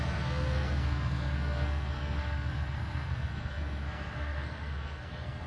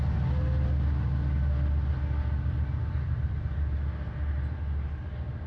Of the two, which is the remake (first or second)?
first